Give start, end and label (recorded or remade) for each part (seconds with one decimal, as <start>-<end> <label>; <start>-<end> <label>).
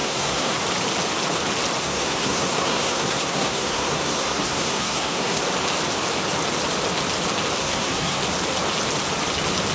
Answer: 0.0-0.6 remade; 0.6-1.8 recorded; 1.8-5.4 remade; 5.4-7.6 recorded; 7.6-8.2 remade; 8.2-9.7 recorded